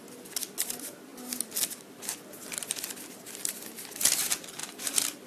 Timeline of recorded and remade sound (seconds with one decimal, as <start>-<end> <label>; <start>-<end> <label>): 0.0-4.6 recorded; 4.6-5.3 remade